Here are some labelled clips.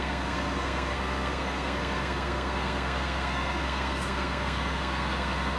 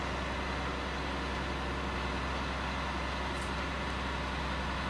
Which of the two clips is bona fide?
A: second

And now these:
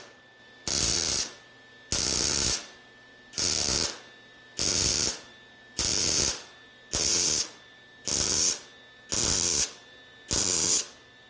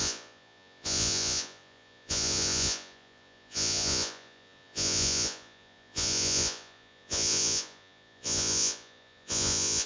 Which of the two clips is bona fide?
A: first